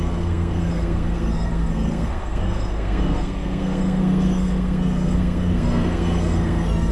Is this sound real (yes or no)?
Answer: no